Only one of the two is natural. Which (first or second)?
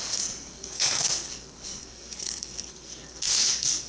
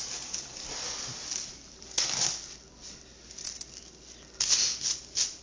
second